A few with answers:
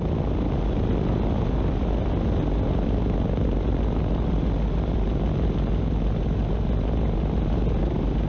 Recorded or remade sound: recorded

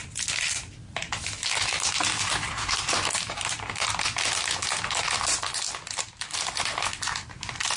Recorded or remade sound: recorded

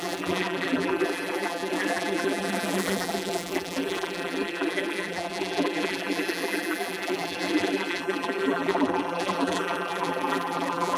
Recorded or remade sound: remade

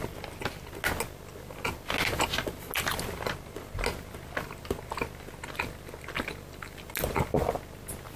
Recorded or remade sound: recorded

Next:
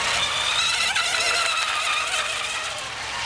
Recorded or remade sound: recorded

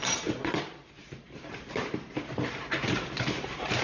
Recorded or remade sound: remade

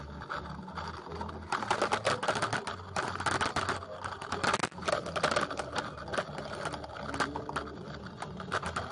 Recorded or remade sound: recorded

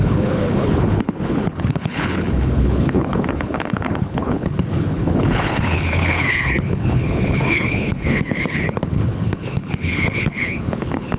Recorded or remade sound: remade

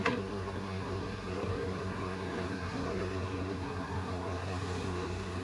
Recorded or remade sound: remade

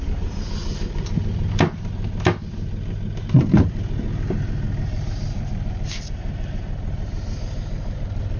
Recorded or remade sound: recorded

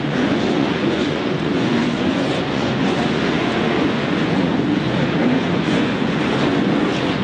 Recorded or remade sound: remade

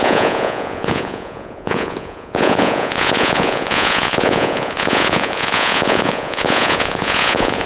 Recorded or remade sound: remade